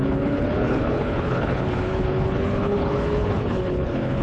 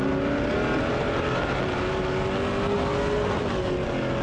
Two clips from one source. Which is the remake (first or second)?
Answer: first